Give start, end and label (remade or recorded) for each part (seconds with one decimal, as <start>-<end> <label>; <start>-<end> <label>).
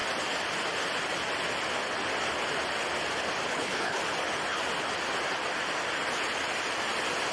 0.0-3.5 recorded; 3.5-4.0 remade; 4.0-7.3 recorded